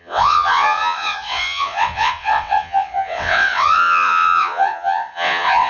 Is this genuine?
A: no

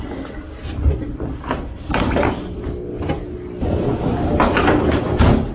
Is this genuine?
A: yes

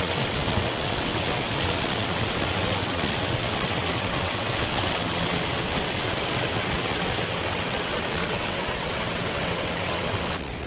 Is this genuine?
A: no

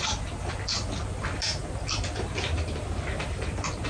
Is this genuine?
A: yes